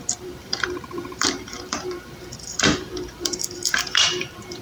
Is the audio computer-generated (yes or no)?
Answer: yes